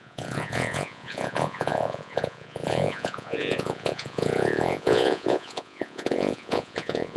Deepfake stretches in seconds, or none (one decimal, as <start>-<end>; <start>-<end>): 0.0-7.2